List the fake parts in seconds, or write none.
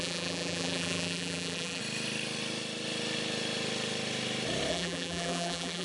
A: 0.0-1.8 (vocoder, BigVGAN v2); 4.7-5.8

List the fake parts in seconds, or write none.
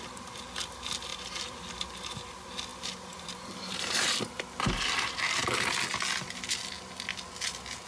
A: 1.1-1.6 (vocoder, BigVGAN v2); 2.7-5.6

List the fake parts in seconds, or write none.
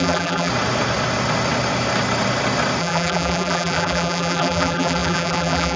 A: 0.0-0.5 (vocoder, BigVGAN v2); 2.8-5.8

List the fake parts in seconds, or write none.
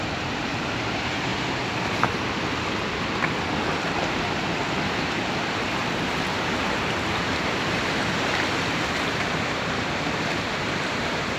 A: 0.0-1.3 (vocoder, BigVGAN v2); 4.0-11.4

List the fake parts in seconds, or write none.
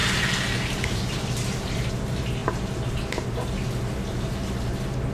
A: 0.0-1.9 (vocoder, BigVGAN v2); 2.4-3.3